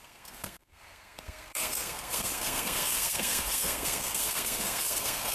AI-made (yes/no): yes